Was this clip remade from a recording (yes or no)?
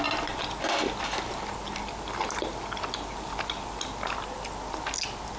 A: no